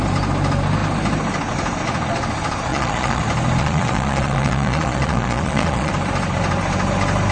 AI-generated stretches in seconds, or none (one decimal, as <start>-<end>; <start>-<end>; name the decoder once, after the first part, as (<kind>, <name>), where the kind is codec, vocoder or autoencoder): 2.7-3.2 (vocoder, Vocos); 3.6-5.9